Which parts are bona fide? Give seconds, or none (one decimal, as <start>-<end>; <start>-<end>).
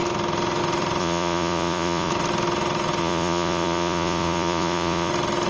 0.0-1.0; 2.1-3.0; 5.1-5.5